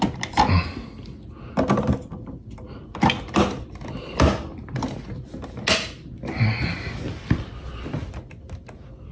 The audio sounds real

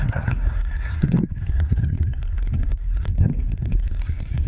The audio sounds fake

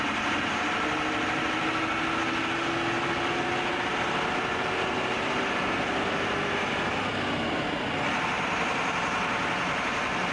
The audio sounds real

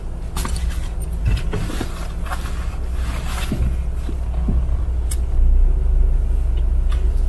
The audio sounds real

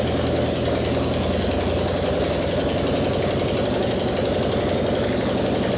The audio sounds real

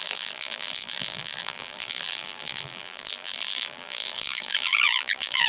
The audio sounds fake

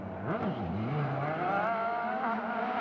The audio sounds real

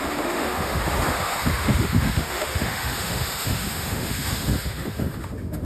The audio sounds fake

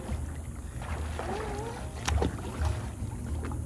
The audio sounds real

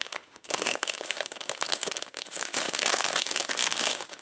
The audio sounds fake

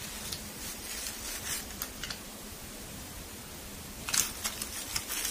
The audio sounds real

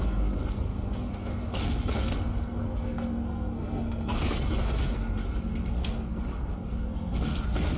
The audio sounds fake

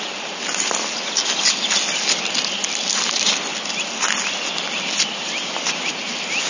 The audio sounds real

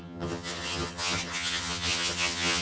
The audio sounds fake